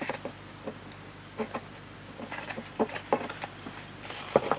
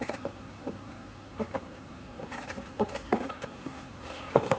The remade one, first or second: second